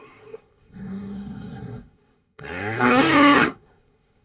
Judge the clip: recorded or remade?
remade